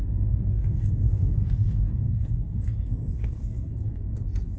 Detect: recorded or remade remade